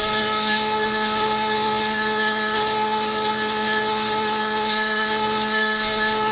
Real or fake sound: fake